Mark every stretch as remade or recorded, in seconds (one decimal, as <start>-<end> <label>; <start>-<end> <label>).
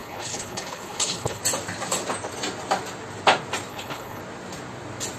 0.0-1.4 remade; 1.4-3.7 recorded; 3.7-4.2 remade; 4.2-5.2 recorded